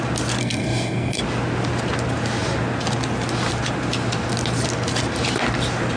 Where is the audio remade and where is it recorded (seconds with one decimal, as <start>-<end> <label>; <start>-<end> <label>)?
0.0-0.4 recorded; 0.4-1.2 remade; 1.2-6.0 recorded